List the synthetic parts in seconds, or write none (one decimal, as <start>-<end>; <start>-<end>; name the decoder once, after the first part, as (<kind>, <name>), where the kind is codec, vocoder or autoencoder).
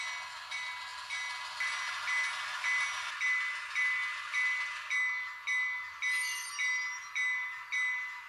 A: none